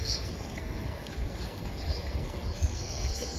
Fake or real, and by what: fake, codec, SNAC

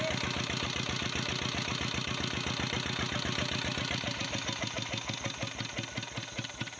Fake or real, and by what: real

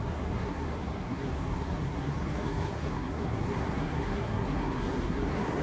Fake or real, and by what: fake, codec, SNAC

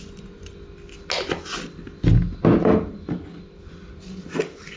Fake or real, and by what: real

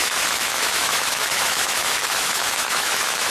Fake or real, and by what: fake, autoencoder, DAC-VAE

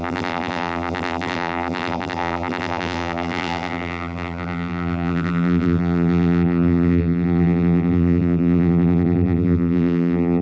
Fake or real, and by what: fake, vocoder, BigVGAN v2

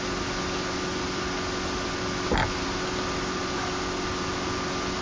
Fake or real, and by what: real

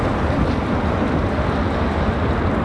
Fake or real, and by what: real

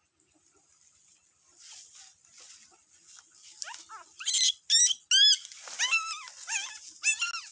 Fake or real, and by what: real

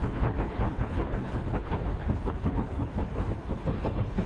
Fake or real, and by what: fake, codec, HILCodec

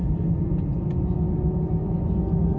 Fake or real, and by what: real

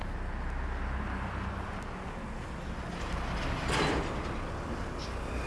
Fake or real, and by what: real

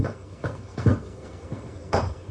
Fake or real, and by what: fake, codec, SNAC